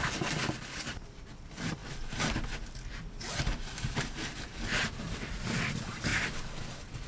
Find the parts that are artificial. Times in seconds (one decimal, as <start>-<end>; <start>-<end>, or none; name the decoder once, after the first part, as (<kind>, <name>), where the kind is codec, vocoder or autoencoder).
0.0-1.8 (vocoder, BigVGAN v2); 3.9-6.1